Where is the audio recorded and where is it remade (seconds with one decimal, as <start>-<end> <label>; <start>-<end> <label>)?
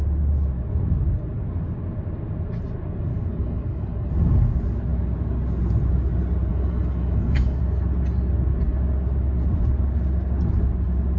0.0-3.1 recorded; 3.1-4.1 remade; 4.1-6.5 recorded; 6.5-7.6 remade; 7.6-11.2 recorded